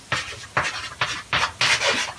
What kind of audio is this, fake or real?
real